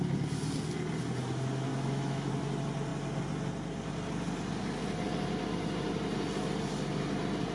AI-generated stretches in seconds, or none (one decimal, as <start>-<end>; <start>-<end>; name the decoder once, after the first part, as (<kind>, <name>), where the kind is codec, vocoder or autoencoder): 1.7-2.3 (autoencoder, DAC-VAE)